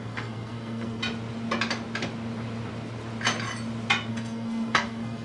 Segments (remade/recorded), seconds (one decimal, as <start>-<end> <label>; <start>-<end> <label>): 0.0-1.0 remade; 1.0-4.1 recorded; 4.1-5.2 remade